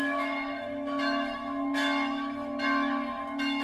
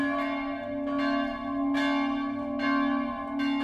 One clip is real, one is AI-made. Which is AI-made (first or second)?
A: first